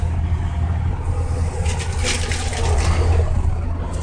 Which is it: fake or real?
real